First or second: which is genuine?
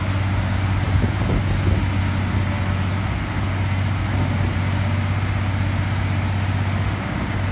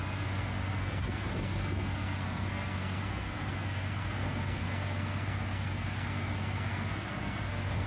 first